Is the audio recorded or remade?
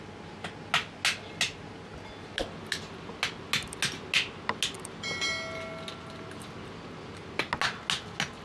recorded